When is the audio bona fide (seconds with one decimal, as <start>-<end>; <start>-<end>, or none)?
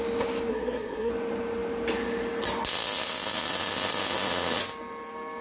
0.0-0.5; 1.1-5.4